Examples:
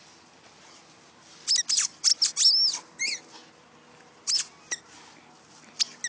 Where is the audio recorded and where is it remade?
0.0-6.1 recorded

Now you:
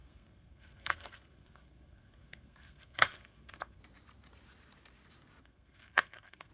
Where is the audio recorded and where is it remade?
0.0-3.8 remade; 3.8-5.4 recorded; 5.4-6.5 remade

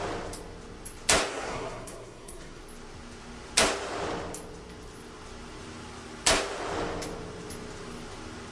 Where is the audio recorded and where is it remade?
0.0-1.3 recorded; 1.3-2.6 remade; 2.6-8.5 recorded

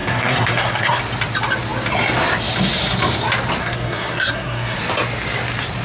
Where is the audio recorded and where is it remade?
0.0-1.0 remade; 1.0-3.6 recorded; 3.6-4.8 remade; 4.8-5.8 recorded

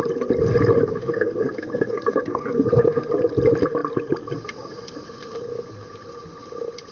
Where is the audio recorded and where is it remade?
0.0-0.9 recorded; 0.9-3.1 remade; 3.1-6.9 recorded